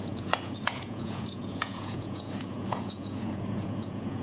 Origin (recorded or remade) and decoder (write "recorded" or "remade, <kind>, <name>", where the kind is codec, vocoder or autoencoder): remade, vocoder, Vocos